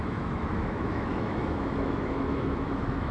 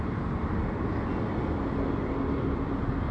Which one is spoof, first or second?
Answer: first